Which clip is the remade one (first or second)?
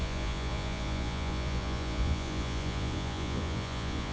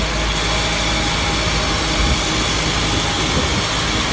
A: first